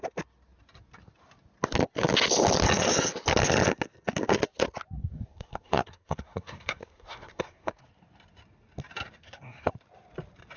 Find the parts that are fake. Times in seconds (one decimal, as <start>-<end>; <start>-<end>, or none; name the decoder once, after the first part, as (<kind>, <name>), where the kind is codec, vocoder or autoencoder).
5.0-7.8 (codec, SNAC); 9.2-9.7